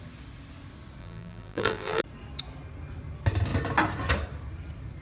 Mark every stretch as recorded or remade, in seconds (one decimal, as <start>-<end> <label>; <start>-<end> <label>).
0.0-1.0 recorded; 1.0-2.0 remade; 2.0-5.0 recorded